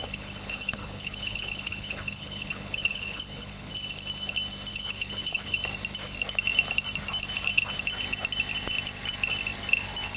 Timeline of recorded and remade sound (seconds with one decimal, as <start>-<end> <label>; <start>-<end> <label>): 0.0-3.7 remade; 3.7-4.7 recorded; 4.7-5.6 remade; 5.6-10.2 recorded